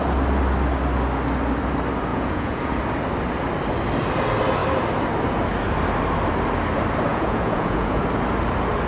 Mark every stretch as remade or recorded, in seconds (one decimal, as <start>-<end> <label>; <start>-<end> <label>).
0.0-2.1 recorded; 2.1-2.7 remade; 2.7-7.1 recorded; 7.1-8.0 remade; 8.0-8.9 recorded